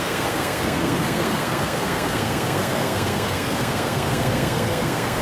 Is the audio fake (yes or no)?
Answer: yes